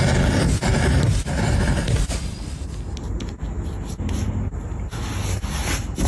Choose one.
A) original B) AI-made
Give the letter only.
A